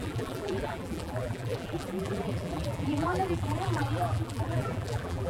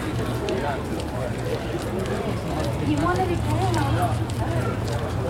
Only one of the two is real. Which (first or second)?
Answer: second